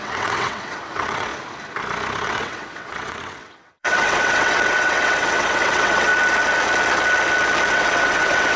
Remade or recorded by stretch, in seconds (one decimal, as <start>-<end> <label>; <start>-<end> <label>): 0.0-1.3 remade; 1.3-2.2 recorded; 2.2-6.1 remade; 6.1-7.7 recorded; 7.7-8.6 remade

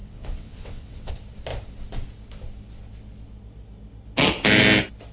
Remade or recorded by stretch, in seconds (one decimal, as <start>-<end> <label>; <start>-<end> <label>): 0.0-1.1 remade; 1.1-5.1 recorded

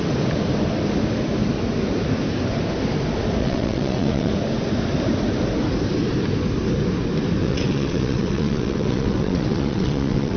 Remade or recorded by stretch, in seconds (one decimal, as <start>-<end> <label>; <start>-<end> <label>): 0.0-3.4 recorded; 3.4-4.3 remade; 4.3-7.4 recorded; 7.4-10.4 remade

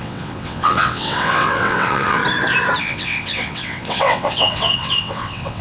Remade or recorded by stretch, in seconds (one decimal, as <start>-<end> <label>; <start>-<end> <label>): 0.0-2.2 remade; 2.2-2.8 recorded; 2.8-5.6 remade

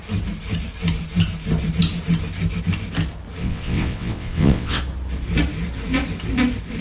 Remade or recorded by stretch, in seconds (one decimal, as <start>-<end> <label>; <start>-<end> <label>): 0.0-3.4 recorded; 3.4-4.8 remade; 4.8-6.8 recorded